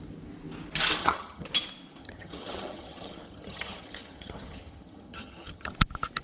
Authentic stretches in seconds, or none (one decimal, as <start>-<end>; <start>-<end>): 0.0-1.0; 1.5-2.0; 5.7-6.2